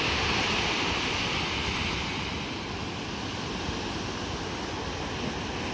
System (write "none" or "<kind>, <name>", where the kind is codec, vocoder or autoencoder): none